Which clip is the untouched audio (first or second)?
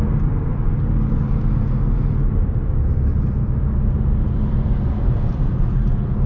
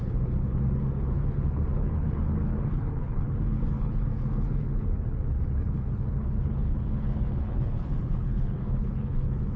first